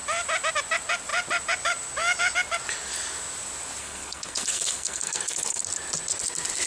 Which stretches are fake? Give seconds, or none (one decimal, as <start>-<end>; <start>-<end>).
3.8-5.6